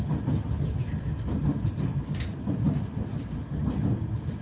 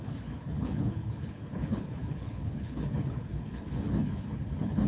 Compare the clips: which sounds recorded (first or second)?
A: first